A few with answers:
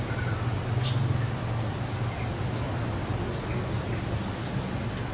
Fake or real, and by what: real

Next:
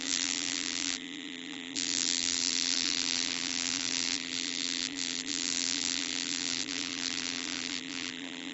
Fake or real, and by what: fake, vocoder, BigVGAN v2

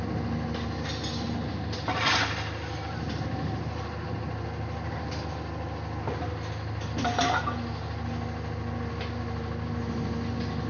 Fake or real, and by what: real